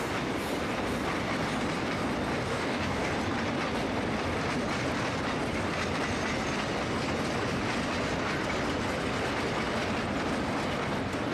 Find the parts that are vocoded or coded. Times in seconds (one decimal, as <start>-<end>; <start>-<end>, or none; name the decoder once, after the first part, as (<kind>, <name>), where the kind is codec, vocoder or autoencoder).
2.5-3.1 (codec, DAC)